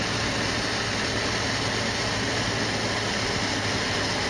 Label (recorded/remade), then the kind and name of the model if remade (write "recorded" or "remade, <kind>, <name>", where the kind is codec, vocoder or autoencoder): recorded